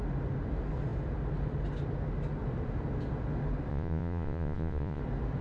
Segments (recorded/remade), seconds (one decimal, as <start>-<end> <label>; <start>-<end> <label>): 0.0-3.7 recorded; 3.7-5.0 remade; 5.0-5.4 recorded